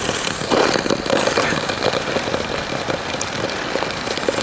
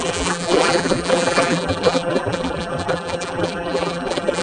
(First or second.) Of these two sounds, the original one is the first